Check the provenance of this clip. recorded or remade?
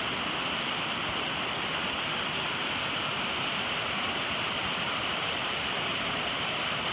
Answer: recorded